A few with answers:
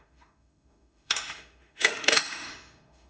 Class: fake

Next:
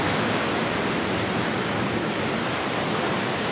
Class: real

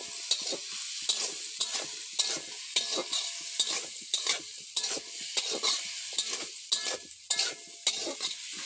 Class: real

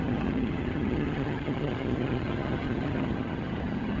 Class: fake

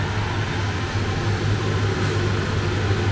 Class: real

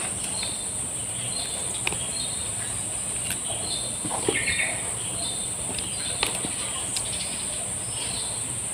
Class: real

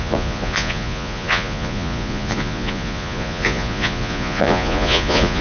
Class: fake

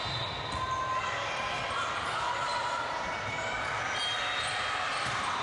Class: real